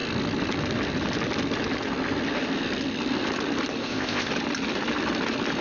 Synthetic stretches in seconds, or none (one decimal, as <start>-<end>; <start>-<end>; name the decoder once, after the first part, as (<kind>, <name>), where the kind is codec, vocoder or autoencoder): 3.8-4.3 (codec, ZipCodec)

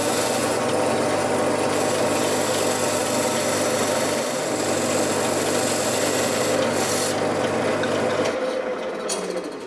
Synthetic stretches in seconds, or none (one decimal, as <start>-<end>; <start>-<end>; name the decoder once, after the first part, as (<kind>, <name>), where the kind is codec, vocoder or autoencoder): 0.0-0.7 (vocoder, Vocos)

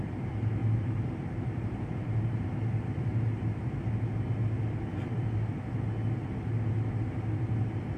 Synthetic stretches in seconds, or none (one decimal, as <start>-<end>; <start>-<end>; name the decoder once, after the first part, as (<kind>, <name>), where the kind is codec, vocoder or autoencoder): 0.6-3.7 (vocoder, BigVGAN v2); 4.9-5.5

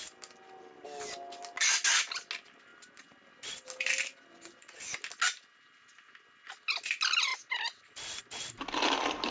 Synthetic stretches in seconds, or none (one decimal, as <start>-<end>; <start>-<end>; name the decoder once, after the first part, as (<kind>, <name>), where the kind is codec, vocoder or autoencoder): none

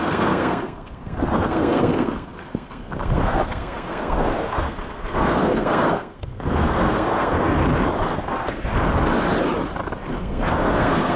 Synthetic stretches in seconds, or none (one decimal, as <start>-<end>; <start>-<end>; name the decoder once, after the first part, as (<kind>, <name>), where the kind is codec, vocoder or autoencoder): 0.0-7.6 (codec, SNAC); 8.1-8.7; 10.1-11.2